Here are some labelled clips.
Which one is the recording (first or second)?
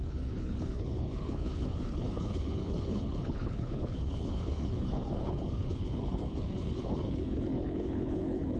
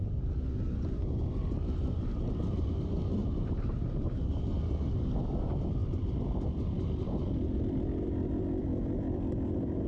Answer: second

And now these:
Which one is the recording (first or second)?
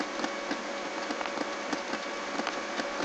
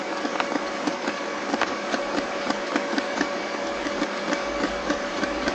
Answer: first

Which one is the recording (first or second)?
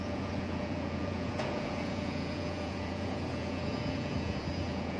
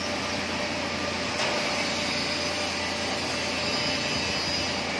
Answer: second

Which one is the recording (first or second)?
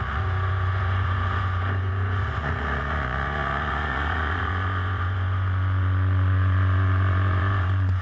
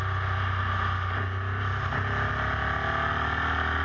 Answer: second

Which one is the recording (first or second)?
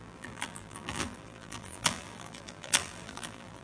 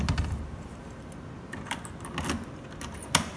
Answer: second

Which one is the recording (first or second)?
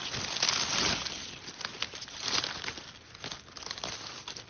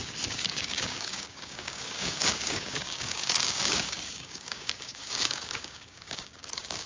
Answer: first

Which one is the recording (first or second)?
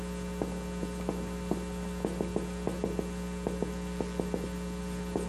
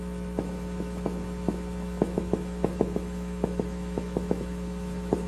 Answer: first